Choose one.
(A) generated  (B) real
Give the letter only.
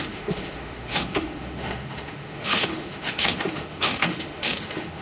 A